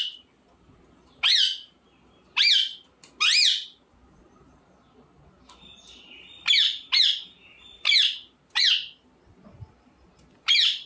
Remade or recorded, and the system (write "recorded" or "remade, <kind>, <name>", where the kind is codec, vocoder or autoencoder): recorded